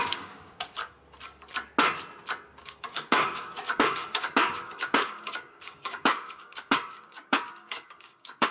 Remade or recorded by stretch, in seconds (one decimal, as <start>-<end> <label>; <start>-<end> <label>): 0.0-0.8 remade; 0.8-2.6 recorded; 2.6-8.5 remade